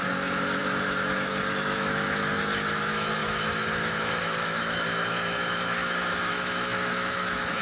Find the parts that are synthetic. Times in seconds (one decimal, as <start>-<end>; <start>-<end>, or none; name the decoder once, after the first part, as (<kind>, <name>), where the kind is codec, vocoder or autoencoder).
0.0-7.6 (autoencoder, DAC-VAE)